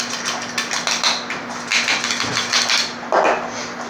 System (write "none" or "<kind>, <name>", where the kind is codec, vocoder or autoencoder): none